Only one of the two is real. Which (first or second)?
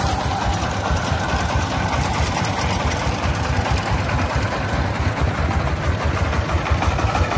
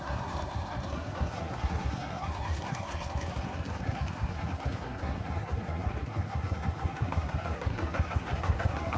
first